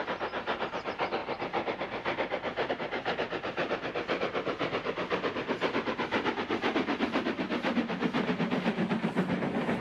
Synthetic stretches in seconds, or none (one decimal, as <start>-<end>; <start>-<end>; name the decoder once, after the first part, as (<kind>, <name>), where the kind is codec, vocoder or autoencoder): none